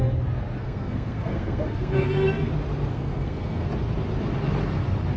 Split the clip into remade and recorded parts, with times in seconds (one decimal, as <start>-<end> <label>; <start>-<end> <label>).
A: 0.0-0.6 recorded; 0.6-2.5 remade; 2.5-2.9 recorded; 2.9-3.7 remade; 3.7-5.2 recorded